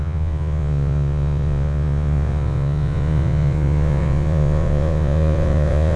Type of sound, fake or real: fake